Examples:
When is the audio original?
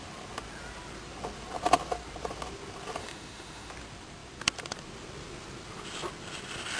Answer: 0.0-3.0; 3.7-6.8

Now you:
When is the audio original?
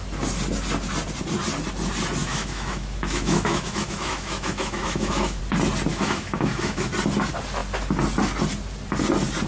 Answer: 0.0-2.2; 5.4-5.9; 6.9-9.5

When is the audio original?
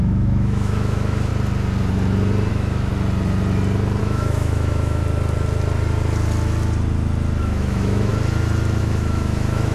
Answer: 1.3-2.5; 2.9-4.0; 5.0-7.4; 8.1-8.8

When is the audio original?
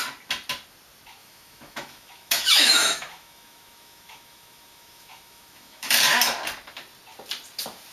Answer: 0.0-1.2; 5.9-7.9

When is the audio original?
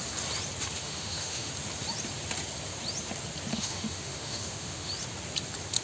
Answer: 0.0-0.8; 1.5-3.5; 4.9-5.8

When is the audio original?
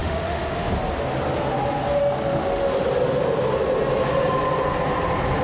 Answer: 0.7-2.0; 2.7-5.4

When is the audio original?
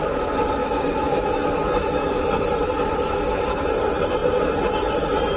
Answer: 0.0-0.6; 2.2-2.9; 3.7-5.4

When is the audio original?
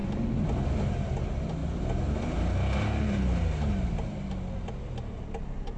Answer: 0.0-5.8